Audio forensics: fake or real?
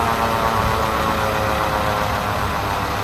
real